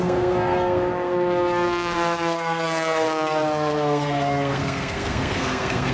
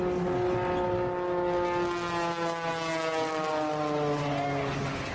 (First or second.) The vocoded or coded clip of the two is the first